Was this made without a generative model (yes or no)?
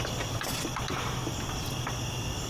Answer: yes